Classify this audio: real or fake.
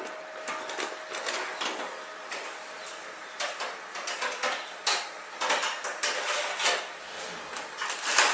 real